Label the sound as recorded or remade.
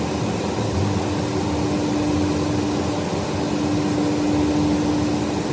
recorded